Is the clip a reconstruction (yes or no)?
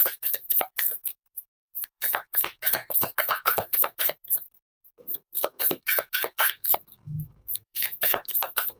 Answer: yes